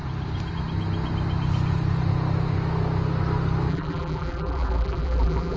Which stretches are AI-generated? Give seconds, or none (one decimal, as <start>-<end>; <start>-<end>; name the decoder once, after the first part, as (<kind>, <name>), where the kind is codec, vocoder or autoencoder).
3.7-5.6 (vocoder, BigVGAN v2)